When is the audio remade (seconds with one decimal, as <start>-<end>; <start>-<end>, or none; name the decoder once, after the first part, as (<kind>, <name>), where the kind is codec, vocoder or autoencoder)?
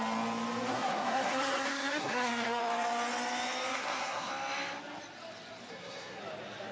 0.7-2.6 (codec, SNAC); 3.7-4.3; 5.7-6.2